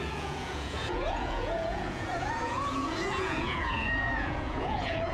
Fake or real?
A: fake